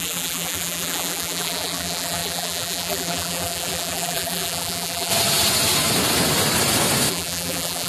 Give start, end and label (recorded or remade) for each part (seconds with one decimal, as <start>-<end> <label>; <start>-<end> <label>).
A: 0.0-5.1 remade; 5.1-7.1 recorded; 7.1-7.9 remade